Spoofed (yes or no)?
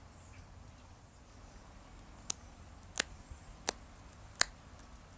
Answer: no